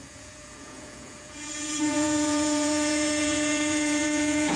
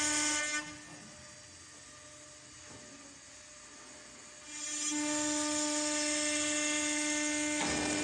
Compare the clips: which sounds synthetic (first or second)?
first